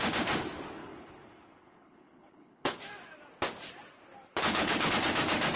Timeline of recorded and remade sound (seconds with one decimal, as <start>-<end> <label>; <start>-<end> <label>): 0.0-0.8 recorded; 0.8-2.8 remade; 2.8-4.1 recorded; 4.1-4.9 remade; 4.9-5.6 recorded